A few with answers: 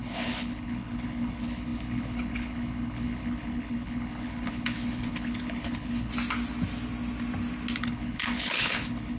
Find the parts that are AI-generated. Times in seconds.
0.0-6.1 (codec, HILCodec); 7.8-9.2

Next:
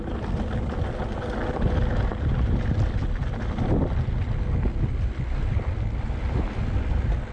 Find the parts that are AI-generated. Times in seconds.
none

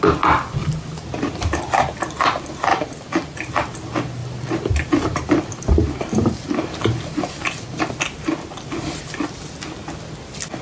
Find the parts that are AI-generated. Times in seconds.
2.7-3.7 (vocoder, BigVGAN v2); 4.2-7.9

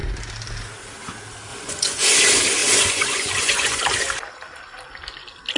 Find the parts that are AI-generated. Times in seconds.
1.5-2.1 (vocoder, Vocos); 2.6-3.8

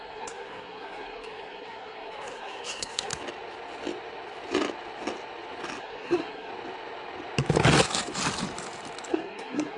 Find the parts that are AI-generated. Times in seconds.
0.0-3.1 (codec, SNAC); 5.8-6.5; 9.1-9.8

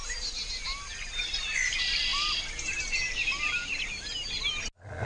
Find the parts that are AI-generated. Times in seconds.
none

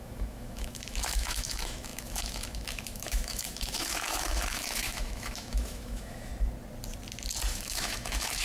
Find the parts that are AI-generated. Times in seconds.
0.0-6.3 (autoencoder, DAC-VAE); 7.5-8.4

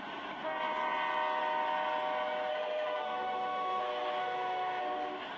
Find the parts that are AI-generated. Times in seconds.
2.5-3.8 (autoencoder, DAC-VAE); 4.2-4.8